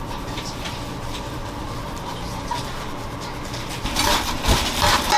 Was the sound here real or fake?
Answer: fake